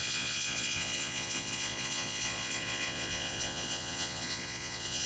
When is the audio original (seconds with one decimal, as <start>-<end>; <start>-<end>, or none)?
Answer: none